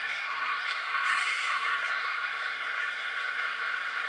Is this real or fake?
fake